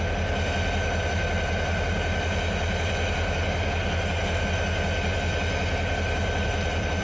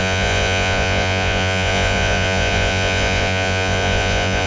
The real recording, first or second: first